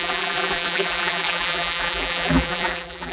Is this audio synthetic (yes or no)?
yes